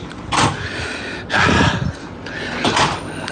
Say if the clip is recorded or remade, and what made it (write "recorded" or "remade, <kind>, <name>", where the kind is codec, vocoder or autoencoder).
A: recorded